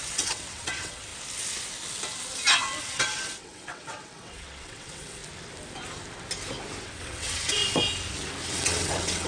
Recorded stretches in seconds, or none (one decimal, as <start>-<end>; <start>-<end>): 1.1-2.8; 5.2-6.8; 7.6-8.5